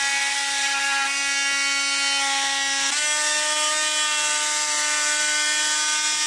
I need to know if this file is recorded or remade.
recorded